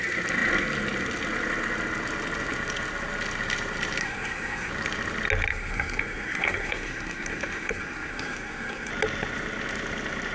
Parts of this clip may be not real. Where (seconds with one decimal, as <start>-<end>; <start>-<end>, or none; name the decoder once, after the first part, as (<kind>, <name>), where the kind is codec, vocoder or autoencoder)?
4.0-4.7 (codec, SNAC); 5.5-8.9